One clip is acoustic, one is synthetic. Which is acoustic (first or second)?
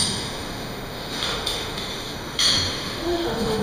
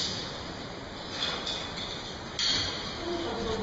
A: second